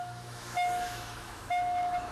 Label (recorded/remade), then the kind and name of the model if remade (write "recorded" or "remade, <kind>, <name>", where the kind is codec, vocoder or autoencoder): remade, autoencoder, DAC-VAE